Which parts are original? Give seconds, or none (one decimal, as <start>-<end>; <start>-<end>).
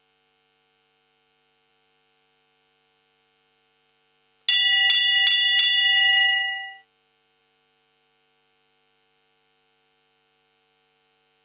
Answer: 0.0-11.4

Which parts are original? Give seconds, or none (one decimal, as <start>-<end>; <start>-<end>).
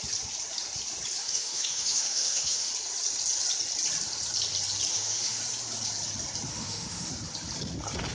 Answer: 0.0-1.2; 2.7-4.9; 5.4-6.5; 7.1-8.1